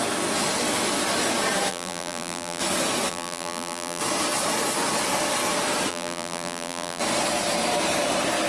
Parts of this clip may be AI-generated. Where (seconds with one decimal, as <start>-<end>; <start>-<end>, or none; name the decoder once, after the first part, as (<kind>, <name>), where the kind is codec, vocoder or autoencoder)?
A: 1.7-2.6 (vocoder, BigVGAN v2); 3.1-4.0; 5.9-7.0